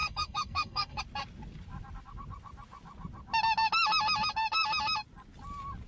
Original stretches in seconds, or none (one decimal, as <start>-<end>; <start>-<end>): 1.0-5.9

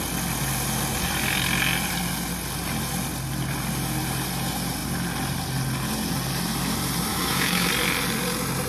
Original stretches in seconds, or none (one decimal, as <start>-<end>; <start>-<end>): 0.0-7.1; 7.7-8.7

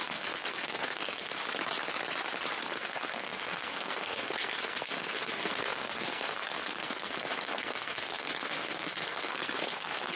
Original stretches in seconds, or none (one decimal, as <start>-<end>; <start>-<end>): 1.4-2.6

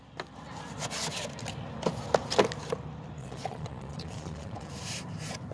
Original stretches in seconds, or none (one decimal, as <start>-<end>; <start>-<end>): 0.0-3.2; 4.7-5.5

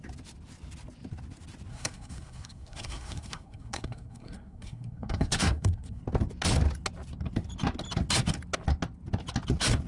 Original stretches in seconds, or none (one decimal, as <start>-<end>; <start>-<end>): 0.0-1.7; 6.0-9.9

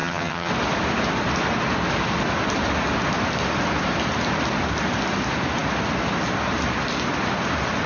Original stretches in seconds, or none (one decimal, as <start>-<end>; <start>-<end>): 0.5-7.9

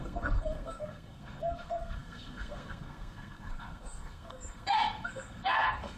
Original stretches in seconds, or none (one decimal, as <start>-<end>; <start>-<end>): none

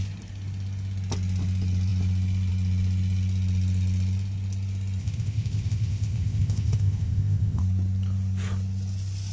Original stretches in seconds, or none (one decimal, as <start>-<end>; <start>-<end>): 0.0-5.0; 7.6-9.3